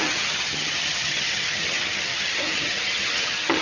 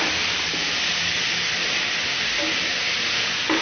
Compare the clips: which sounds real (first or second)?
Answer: second